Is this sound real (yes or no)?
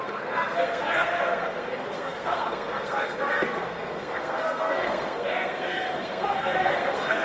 no